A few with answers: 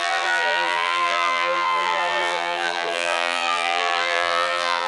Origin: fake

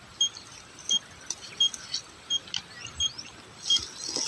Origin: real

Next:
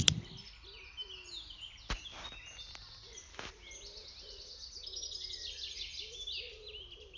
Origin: real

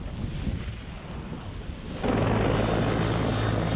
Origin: real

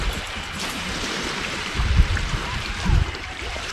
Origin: fake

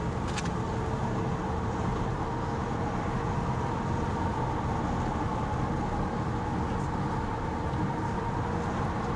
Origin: real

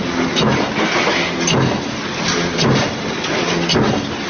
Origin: real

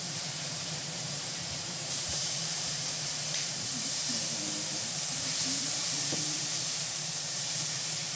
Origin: fake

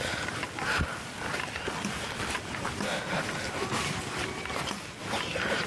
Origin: real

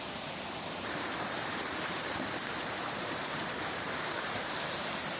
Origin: fake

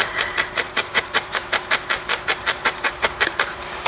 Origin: fake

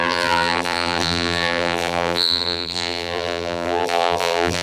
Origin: fake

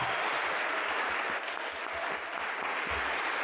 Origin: real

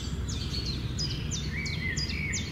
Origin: real